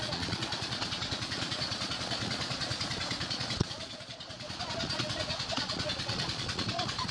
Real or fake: fake